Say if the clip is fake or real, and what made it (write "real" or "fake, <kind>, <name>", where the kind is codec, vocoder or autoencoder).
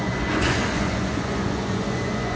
fake, vocoder, Vocos